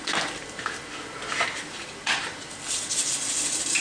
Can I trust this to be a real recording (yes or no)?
yes